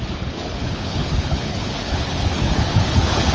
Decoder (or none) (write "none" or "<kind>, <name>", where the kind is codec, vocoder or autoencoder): codec, HILCodec